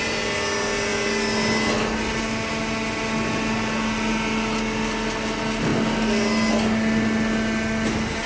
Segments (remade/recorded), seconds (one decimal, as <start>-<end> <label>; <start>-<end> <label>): 0.0-8.3 recorded